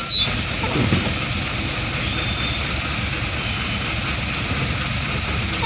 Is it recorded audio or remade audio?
recorded